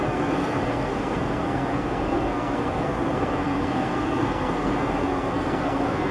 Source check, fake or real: fake